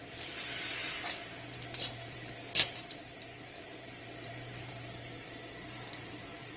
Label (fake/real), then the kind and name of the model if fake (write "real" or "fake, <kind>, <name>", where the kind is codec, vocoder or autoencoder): fake, vocoder, BigVGAN v2